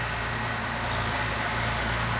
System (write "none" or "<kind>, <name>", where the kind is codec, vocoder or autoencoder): none